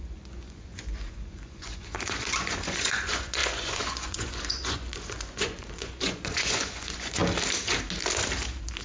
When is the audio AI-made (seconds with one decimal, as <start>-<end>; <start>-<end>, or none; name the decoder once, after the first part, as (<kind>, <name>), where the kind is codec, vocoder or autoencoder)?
0.0-7.2 (vocoder, Vocos)